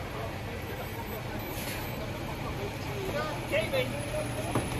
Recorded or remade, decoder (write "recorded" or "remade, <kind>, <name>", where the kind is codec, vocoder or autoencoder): recorded